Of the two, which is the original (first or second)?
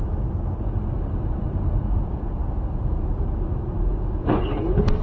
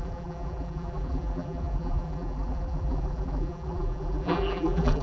first